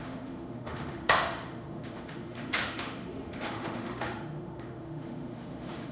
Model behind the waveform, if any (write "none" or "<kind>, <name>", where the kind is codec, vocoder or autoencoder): autoencoder, DAC-VAE